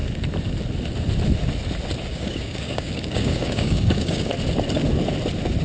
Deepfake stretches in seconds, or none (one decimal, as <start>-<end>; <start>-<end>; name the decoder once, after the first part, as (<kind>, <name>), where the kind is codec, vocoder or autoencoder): 2.1-4.3 (codec, DAC)